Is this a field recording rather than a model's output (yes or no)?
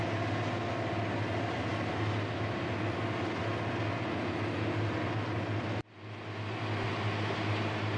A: yes